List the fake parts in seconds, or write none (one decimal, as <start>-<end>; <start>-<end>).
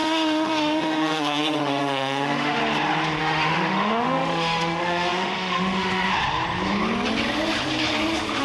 0.0-2.6; 3.2-6.1